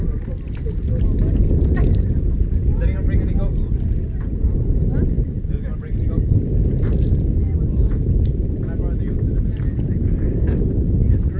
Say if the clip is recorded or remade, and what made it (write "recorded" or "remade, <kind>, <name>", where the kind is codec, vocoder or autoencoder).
recorded